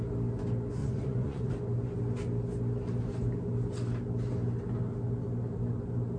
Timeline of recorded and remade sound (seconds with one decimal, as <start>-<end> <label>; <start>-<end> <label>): 0.0-0.8 recorded; 0.8-1.5 remade; 1.5-6.2 recorded